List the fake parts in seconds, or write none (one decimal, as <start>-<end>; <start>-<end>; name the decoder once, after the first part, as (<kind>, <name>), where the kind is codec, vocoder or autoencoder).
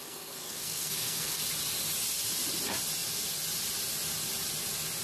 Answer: 0.0-1.4 (codec, SNAC)